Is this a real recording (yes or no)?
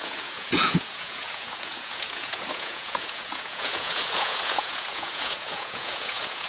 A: no